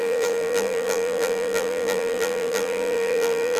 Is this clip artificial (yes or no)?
yes